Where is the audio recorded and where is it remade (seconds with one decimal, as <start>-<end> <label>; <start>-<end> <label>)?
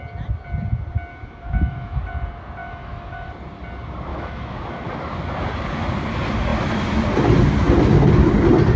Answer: 0.0-1.1 recorded; 1.1-2.1 remade; 2.1-2.6 recorded; 2.6-3.3 remade; 3.3-4.1 recorded; 4.1-4.6 remade; 4.6-8.8 recorded